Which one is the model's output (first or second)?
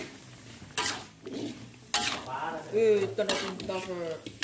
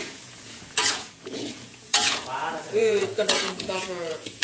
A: second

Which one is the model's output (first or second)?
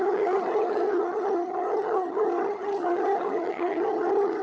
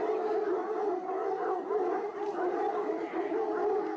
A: first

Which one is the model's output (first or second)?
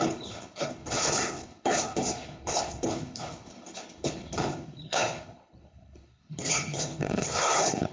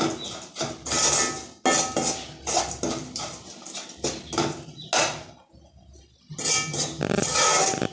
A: first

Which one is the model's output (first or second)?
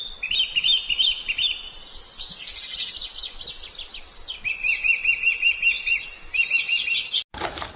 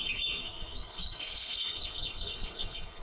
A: second